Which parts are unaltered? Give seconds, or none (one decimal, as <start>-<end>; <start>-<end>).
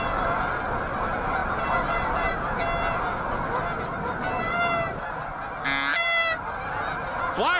0.0-7.6